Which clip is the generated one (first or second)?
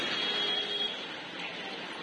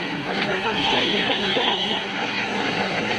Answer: second